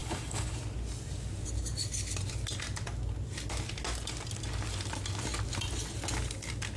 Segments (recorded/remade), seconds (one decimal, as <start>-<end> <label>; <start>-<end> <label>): 0.0-0.6 remade; 0.6-6.8 recorded